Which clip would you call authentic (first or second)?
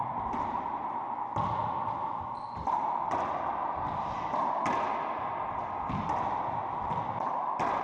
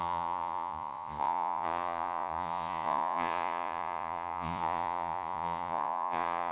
first